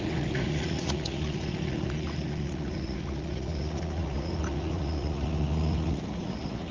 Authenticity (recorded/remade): remade